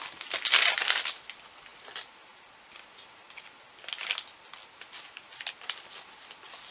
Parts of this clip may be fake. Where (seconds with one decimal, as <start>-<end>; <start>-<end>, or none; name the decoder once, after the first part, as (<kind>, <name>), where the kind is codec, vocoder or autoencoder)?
none